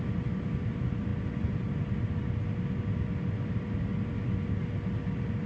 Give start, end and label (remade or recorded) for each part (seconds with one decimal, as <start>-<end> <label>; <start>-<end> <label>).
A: 0.0-5.5 recorded